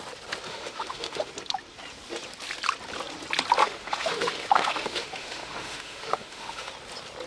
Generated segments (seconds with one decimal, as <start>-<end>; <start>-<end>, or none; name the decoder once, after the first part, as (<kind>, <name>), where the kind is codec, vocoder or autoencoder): 0.5-1.3 (autoencoder, DAC-VAE); 3.6-6.7